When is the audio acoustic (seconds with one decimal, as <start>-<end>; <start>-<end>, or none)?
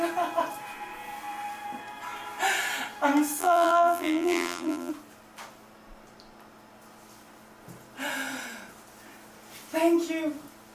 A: 0.0-3.4; 4.9-10.7